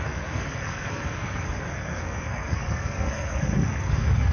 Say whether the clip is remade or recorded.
remade